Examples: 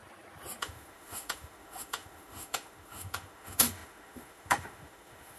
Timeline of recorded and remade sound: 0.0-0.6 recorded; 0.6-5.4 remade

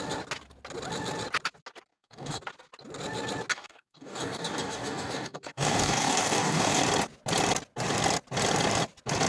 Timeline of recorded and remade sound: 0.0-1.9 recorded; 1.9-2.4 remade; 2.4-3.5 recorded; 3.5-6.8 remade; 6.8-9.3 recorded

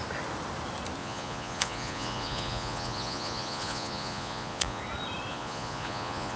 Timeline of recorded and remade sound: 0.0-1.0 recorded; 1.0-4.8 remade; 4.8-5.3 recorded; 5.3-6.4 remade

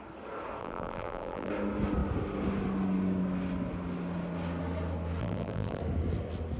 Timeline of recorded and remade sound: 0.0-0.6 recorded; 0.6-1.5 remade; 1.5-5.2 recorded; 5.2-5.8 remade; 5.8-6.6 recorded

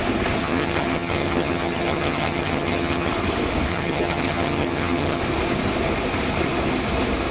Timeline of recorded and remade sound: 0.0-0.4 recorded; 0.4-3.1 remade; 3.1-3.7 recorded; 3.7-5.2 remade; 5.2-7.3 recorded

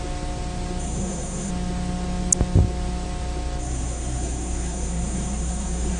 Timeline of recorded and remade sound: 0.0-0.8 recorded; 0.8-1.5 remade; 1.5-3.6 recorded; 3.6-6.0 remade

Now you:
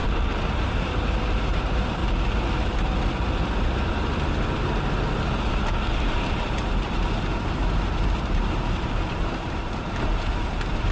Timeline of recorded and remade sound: 0.0-0.5 recorded; 0.5-2.0 remade; 2.0-6.7 recorded; 6.7-10.9 remade